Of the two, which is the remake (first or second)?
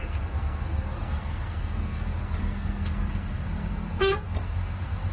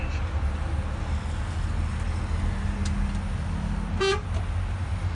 first